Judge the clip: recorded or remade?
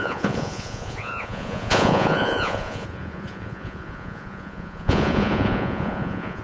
remade